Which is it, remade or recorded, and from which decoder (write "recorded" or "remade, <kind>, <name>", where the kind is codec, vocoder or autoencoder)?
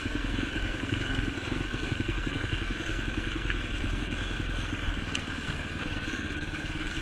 remade, codec, SNAC